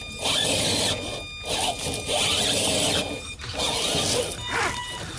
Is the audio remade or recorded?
recorded